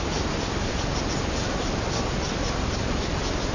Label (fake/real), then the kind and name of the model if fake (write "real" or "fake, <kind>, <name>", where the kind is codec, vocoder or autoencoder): real